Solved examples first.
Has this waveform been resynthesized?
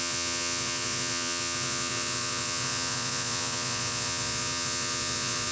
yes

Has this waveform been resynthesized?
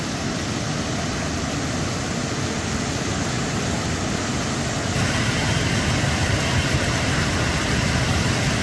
no